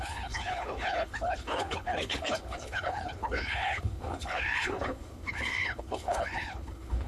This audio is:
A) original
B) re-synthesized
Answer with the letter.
B